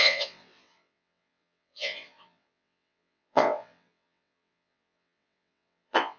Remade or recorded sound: remade